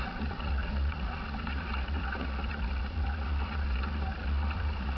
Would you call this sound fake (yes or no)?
yes